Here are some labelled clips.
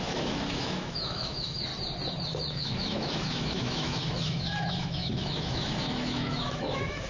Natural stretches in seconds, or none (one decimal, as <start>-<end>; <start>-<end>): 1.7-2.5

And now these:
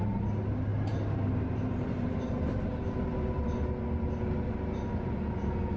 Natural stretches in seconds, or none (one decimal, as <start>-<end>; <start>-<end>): 0.0-0.7; 3.7-5.8

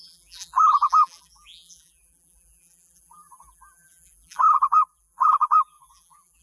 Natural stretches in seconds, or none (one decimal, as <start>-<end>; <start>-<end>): none

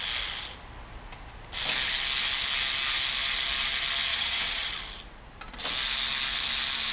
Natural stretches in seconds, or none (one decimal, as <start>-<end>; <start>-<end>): 0.0-4.1; 4.7-6.9

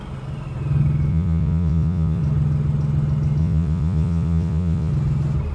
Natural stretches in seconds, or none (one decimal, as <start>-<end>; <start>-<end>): 0.0-1.1; 2.2-3.4; 4.9-5.5

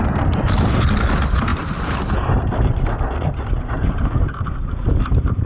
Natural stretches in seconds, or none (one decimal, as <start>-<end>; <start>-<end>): 0.0-5.5

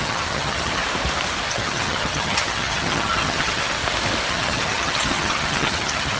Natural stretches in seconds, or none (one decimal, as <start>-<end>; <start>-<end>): 0.8-1.5; 3.8-4.3

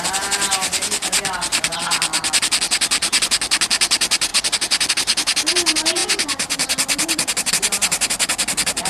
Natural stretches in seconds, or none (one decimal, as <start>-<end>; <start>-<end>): 0.0-8.9